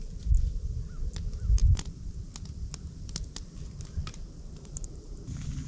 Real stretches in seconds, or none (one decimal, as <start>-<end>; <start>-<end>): none